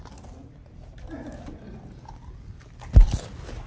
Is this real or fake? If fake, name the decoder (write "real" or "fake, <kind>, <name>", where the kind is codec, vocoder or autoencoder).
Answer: real